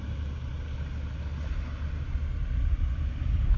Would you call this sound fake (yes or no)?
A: no